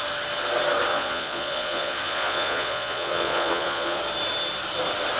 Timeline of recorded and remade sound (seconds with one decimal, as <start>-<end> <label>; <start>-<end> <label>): 0.0-0.9 recorded; 0.9-4.0 remade; 4.0-5.2 recorded

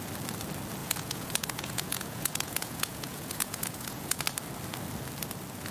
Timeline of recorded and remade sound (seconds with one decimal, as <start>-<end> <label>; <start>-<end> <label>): 0.0-0.8 recorded; 0.8-4.2 remade; 4.2-5.7 recorded

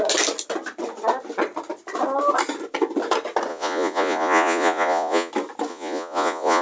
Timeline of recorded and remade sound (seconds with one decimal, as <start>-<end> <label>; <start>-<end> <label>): 0.0-3.5 recorded; 3.5-5.3 remade; 5.3-5.7 recorded; 5.7-6.6 remade

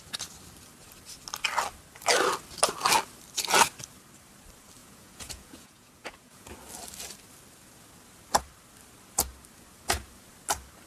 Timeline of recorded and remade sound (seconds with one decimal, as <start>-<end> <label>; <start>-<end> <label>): 0.0-4.8 recorded; 4.8-6.5 remade; 6.5-10.9 recorded